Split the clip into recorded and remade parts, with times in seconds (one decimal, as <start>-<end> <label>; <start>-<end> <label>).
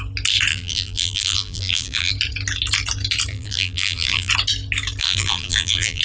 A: 0.0-0.5 recorded; 0.5-2.1 remade; 2.1-3.3 recorded; 3.3-4.3 remade; 4.3-5.0 recorded; 5.0-6.0 remade